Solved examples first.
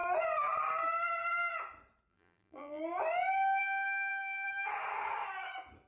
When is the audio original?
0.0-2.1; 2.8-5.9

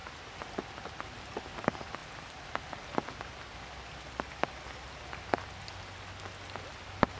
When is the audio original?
0.0-7.2

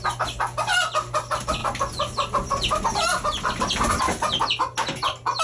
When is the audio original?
0.0-5.4

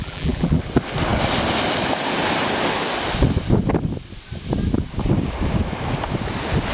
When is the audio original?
0.6-6.7

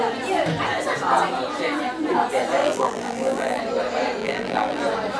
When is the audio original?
0.0-2.6; 3.6-4.2; 4.8-5.2